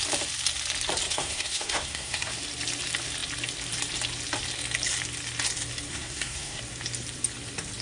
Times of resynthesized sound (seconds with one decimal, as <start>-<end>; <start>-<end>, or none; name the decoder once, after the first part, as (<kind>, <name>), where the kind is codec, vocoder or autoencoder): 1.1-2.3 (codec, SNAC); 5.9-6.6